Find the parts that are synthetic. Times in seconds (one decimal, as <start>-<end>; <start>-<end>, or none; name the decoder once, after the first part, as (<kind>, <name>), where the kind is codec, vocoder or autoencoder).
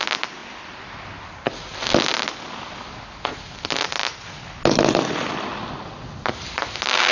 none